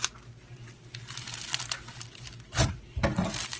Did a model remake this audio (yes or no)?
no